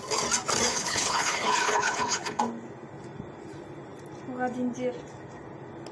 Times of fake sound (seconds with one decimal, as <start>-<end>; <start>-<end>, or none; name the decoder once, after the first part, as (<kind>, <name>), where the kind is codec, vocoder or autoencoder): 0.7-2.4 (codec, HILCodec)